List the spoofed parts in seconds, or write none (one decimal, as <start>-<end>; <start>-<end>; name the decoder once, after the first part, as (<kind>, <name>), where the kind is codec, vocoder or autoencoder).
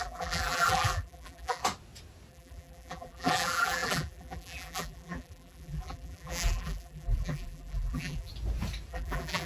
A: 0.0-1.6 (vocoder, BigVGAN v2); 2.3-8.3; 8.9-9.5